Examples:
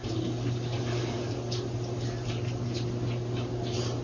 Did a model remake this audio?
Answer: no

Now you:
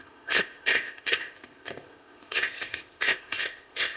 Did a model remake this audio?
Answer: yes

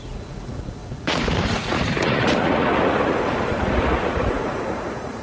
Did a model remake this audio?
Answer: yes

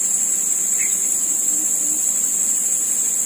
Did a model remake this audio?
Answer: no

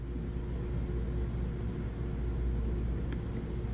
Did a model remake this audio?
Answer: no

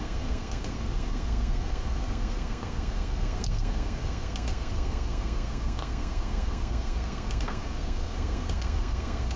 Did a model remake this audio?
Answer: yes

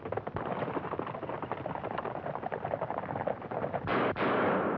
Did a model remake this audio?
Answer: no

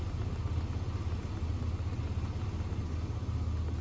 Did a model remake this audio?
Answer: no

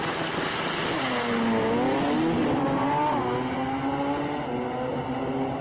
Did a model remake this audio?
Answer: no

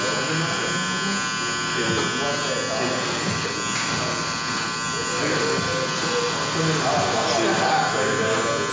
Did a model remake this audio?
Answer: no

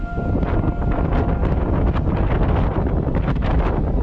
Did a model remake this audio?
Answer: no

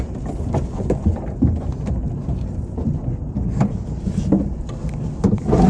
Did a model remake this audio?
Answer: no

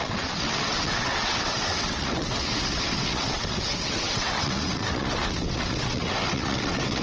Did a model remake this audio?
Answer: yes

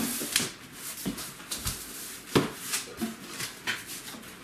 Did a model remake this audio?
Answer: no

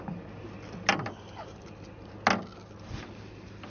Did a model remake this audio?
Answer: no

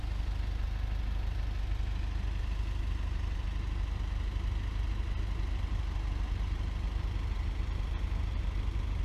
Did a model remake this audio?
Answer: no